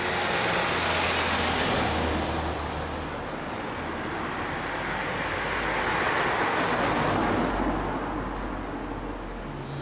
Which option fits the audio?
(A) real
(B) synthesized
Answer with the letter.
A